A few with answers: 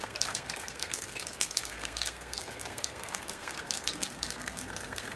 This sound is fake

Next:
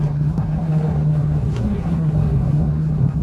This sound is fake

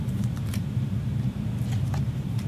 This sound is fake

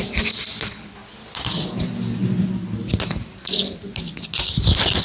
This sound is real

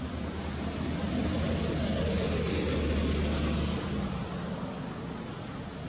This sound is real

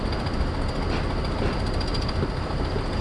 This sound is real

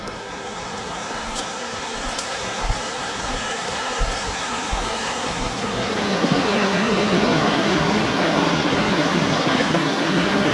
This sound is fake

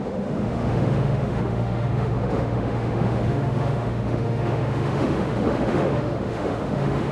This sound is fake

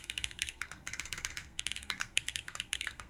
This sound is fake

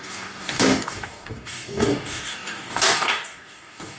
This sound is fake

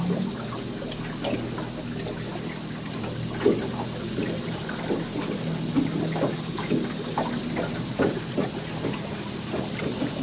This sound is real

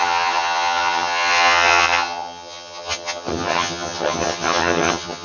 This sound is fake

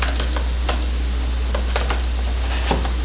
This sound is real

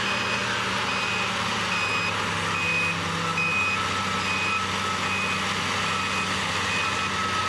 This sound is real